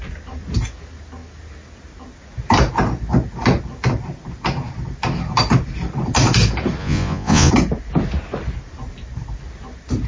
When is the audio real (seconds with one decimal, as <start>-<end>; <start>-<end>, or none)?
0.0-6.8; 7.5-10.1